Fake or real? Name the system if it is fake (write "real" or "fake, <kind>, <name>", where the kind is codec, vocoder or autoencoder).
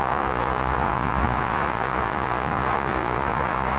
fake, vocoder, Vocos